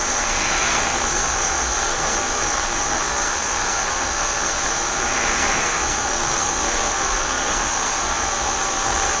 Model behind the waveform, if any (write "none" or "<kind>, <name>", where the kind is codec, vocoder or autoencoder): codec, SNAC